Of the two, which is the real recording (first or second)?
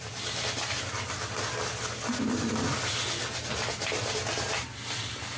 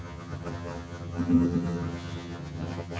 first